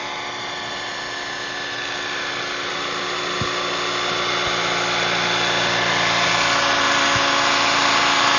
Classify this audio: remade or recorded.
recorded